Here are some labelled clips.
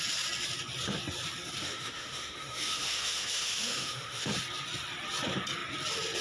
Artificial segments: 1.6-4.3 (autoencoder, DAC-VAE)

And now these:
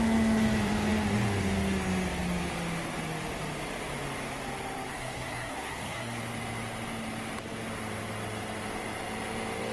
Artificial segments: 4.9-6.2 (codec, SNAC)

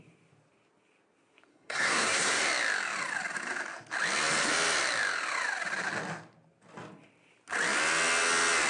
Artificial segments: 1.5-2.4 (codec, SNAC)

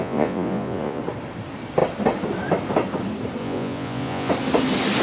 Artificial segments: 0.0-1.0 (vocoder, Vocos); 3.4-4.3

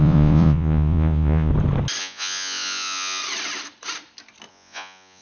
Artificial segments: 0.0-1.5 (vocoder, Vocos); 2.0-3.2; 4.5-5.2

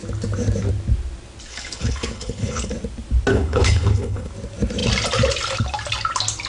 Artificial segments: 1.5-2.7 (codec, HILCodec); 3.3-4.3